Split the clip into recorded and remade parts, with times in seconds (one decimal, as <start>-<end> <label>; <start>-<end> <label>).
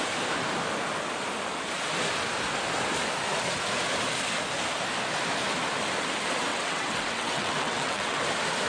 0.0-6.5 recorded; 6.5-8.2 remade; 8.2-8.7 recorded